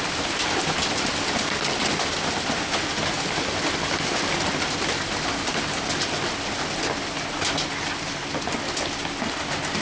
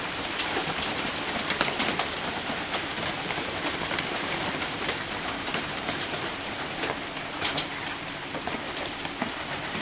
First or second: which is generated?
second